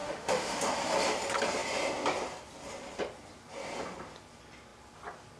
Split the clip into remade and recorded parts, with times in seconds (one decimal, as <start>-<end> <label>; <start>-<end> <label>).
0.0-0.6 remade; 0.6-5.4 recorded